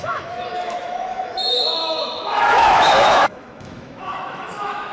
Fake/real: fake